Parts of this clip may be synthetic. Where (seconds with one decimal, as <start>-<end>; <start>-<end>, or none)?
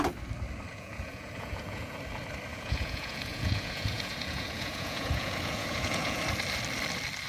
0.7-1.9; 2.5-6.2